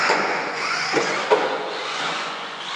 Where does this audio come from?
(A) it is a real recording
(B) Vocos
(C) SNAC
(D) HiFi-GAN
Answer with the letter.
B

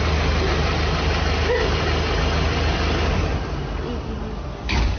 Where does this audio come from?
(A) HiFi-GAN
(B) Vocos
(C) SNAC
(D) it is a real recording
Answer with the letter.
D